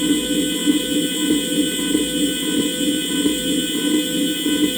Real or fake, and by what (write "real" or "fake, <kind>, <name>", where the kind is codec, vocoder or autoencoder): real